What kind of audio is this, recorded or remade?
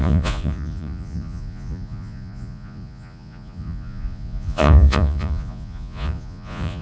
remade